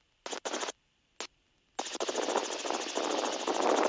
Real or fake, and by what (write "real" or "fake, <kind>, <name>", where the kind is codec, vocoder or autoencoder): real